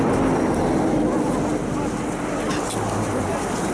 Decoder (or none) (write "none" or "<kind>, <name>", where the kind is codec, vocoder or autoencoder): none